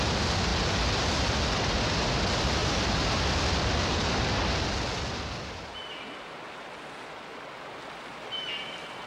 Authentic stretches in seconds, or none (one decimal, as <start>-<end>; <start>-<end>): 0.0-2.6; 4.2-9.1